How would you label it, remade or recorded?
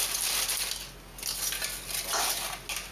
recorded